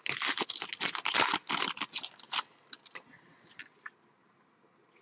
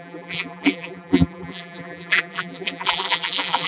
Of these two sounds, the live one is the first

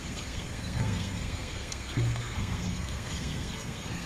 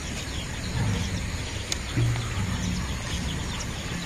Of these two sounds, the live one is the second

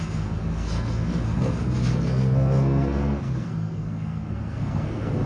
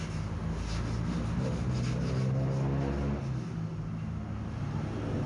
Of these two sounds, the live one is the second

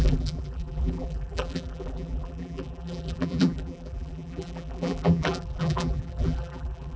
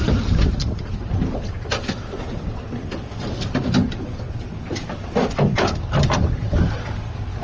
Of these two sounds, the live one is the second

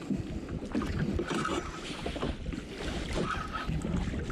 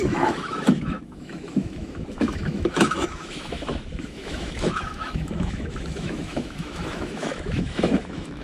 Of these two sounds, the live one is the first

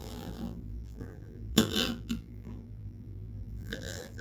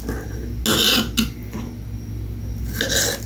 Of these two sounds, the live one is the second